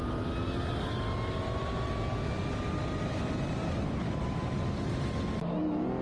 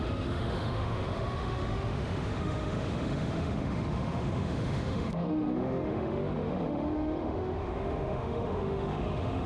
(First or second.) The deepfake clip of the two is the second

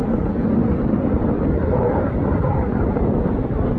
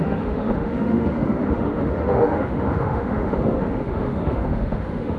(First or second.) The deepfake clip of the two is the second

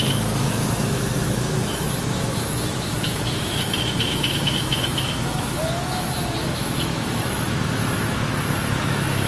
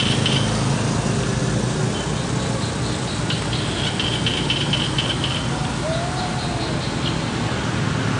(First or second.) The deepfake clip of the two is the first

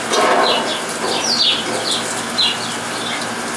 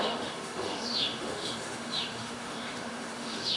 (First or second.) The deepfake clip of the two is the second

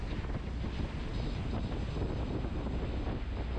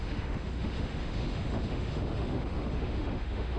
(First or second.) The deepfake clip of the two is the second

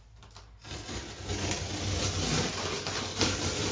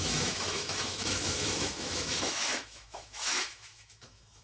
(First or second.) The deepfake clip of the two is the second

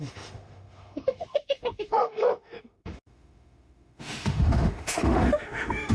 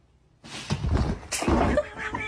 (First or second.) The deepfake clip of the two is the first